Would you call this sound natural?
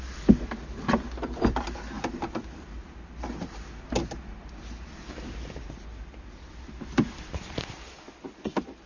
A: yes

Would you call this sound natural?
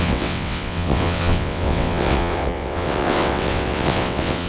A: no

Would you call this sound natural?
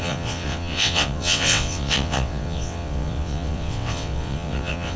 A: no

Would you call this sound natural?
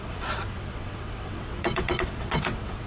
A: no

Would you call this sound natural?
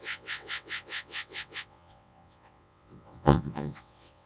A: no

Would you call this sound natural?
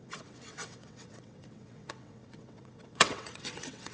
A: no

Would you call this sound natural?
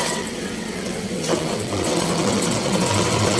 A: no